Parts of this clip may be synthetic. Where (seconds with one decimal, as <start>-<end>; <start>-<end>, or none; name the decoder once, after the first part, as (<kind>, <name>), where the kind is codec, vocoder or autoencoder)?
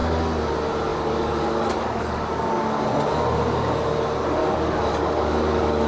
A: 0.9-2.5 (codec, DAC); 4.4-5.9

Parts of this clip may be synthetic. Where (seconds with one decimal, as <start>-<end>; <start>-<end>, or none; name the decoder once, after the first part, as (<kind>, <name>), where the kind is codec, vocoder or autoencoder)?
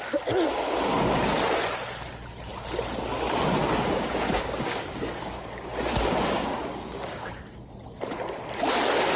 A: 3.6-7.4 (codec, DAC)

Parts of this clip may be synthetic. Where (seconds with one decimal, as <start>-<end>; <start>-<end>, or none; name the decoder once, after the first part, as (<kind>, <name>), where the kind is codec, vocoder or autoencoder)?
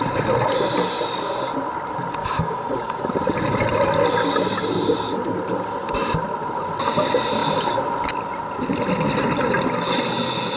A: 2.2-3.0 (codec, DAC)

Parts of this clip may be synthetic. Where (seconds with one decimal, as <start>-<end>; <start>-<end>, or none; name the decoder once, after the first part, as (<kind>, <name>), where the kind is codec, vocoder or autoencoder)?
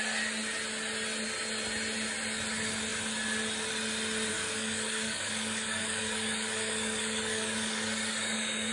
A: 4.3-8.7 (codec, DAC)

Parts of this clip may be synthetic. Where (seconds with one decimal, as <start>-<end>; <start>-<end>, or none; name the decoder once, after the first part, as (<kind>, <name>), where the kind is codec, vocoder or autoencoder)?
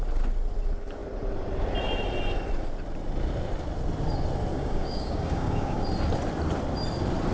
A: 4.5-5.8 (codec, DAC)